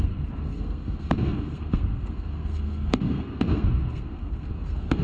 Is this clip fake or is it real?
fake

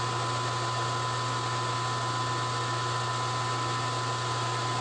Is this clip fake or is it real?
real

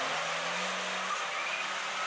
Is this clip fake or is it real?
real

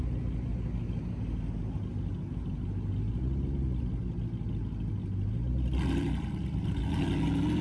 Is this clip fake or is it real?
real